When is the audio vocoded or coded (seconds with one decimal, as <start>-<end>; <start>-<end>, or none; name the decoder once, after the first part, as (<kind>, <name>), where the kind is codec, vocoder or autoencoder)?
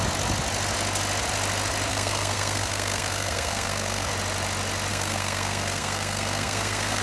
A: 1.9-4.1 (codec, SNAC); 4.9-7.0